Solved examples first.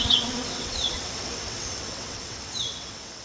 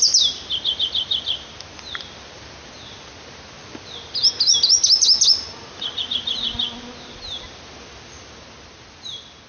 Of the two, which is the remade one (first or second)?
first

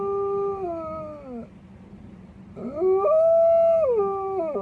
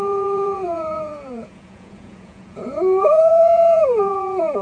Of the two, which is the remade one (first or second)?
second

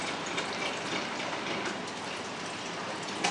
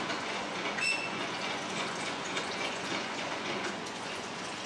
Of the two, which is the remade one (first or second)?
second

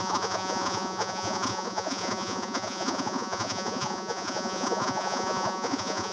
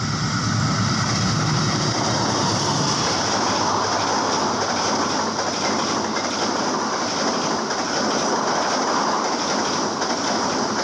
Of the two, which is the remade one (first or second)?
first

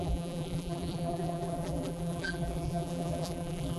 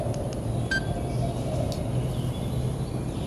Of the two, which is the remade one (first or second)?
first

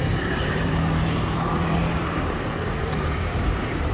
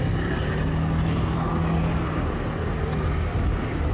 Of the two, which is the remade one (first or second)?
first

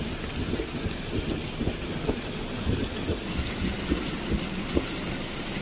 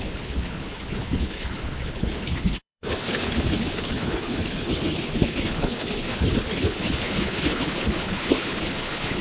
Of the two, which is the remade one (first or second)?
second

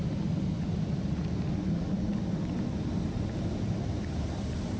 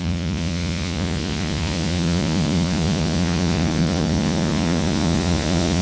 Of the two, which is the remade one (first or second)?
second